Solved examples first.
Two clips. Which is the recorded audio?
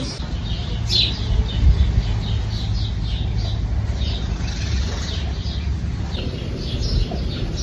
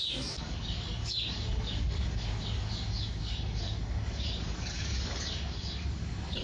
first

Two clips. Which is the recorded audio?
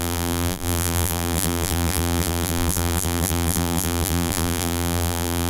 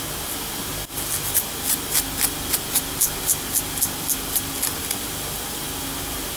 second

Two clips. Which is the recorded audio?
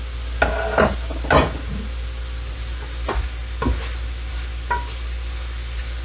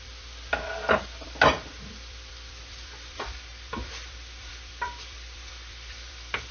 first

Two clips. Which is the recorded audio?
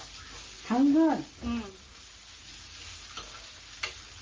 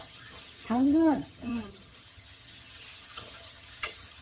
first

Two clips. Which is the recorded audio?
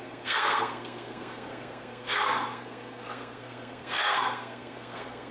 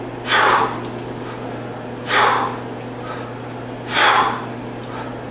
second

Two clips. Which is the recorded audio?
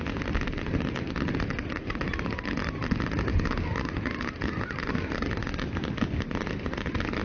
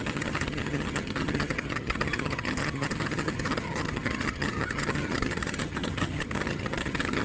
first